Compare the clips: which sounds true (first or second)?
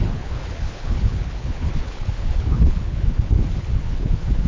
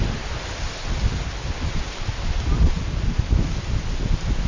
second